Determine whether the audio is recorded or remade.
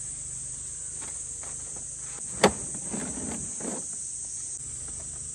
recorded